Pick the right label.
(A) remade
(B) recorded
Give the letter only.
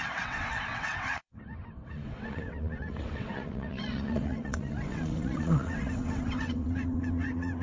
A